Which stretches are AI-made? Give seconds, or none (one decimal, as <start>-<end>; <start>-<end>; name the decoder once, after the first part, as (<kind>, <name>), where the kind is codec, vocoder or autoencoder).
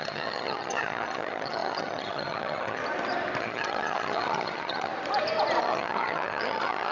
0.0-2.8 (vocoder, HiFi-GAN); 3.4-4.9; 5.6-6.9